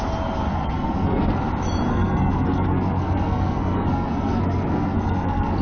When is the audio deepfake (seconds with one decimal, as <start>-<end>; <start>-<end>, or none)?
0.5-1.4; 1.9-5.6